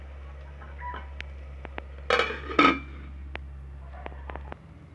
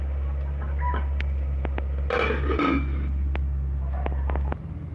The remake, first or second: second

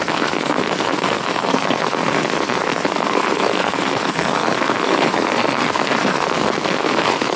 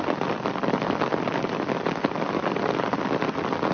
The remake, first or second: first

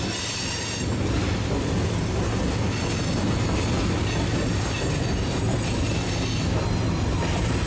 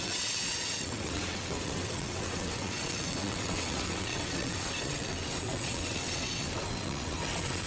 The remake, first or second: second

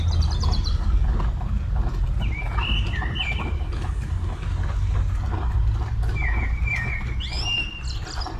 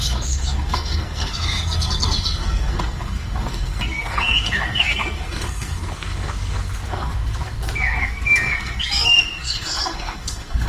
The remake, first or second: second